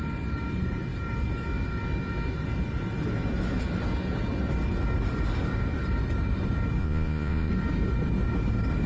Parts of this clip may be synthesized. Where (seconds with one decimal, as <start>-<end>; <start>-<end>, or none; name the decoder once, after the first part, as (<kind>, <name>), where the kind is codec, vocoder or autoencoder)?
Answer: 6.8-7.5 (vocoder, Vocos)

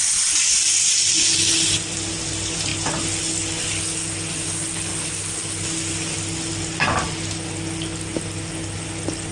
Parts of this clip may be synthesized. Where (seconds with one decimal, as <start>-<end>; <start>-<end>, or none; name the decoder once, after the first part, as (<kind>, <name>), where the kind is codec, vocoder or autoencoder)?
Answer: none